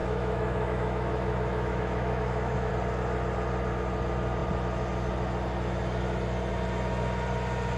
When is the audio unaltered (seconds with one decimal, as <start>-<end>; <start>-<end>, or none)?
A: 2.7-7.8